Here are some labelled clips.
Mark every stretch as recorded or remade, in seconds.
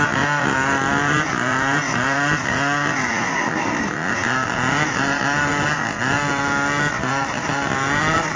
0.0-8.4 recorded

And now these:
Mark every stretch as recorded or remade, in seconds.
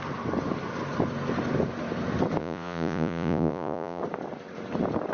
0.0-2.4 recorded; 2.4-4.0 remade; 4.0-5.1 recorded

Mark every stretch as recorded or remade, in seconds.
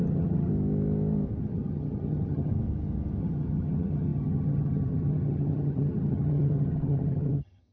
0.0-0.5 remade; 0.5-1.4 recorded; 1.4-2.5 remade; 2.5-3.2 recorded; 3.2-7.7 remade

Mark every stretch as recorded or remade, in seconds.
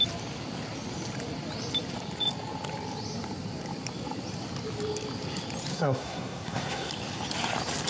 0.0-5.7 recorded; 5.7-6.9 remade; 6.9-7.9 recorded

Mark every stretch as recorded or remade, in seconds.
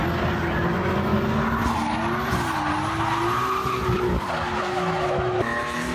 0.0-0.7 recorded; 0.7-1.1 remade; 1.1-4.6 recorded; 4.6-5.9 remade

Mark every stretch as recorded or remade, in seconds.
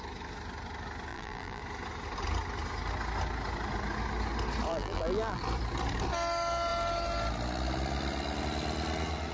0.0-1.1 recorded; 1.1-1.6 remade; 1.6-4.7 recorded; 4.7-5.4 remade; 5.4-9.3 recorded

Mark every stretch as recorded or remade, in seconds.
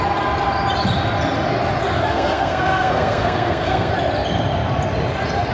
0.0-2.0 recorded; 2.0-3.9 remade; 3.9-5.5 recorded